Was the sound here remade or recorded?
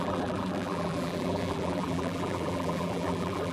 remade